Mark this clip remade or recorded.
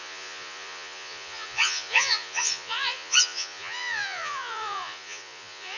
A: remade